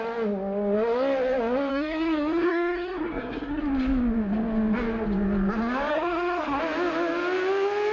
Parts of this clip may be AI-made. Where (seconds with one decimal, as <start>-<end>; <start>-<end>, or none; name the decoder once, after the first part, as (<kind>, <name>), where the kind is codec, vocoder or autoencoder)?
1.7-3.6 (codec, SNAC); 5.9-6.6